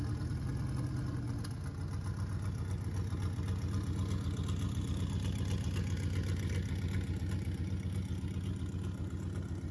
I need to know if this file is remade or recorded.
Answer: recorded